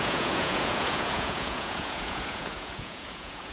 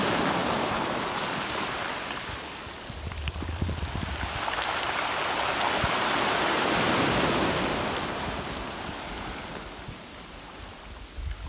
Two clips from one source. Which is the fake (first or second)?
first